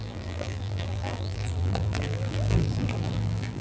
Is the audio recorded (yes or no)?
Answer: no